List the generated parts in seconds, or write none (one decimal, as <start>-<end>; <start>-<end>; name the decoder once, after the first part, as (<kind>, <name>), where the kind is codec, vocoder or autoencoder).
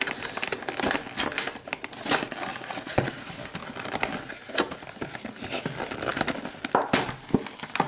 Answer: 2.5-3.1 (vocoder, Vocos)